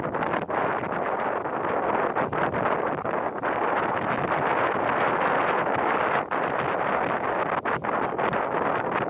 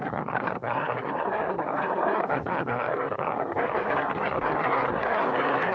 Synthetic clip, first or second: second